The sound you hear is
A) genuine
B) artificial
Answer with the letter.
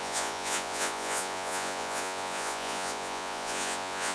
B